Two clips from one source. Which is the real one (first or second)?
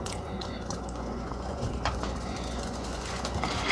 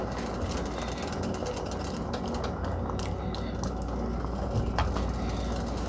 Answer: second